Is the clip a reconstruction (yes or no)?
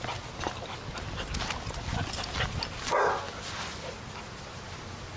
no